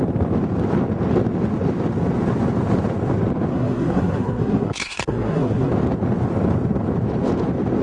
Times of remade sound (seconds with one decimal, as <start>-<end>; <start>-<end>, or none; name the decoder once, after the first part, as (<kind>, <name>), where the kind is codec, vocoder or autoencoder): 3.5-5.7 (codec, SNAC)